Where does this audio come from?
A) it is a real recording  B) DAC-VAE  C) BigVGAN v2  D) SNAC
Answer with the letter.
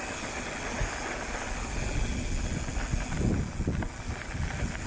A